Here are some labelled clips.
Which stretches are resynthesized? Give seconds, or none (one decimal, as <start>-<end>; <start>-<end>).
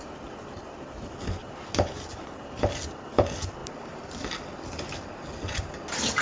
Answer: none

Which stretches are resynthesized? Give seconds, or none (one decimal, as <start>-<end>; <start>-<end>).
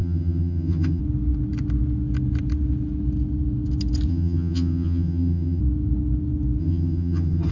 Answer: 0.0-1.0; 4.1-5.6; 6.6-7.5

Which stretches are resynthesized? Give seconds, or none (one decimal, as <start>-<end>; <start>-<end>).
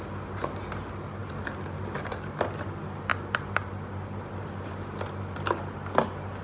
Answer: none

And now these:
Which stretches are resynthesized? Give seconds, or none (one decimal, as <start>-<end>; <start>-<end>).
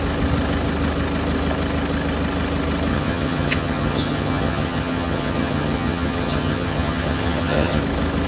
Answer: 2.9-7.8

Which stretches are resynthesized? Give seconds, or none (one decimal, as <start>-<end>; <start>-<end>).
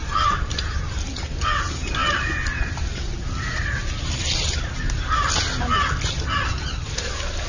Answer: none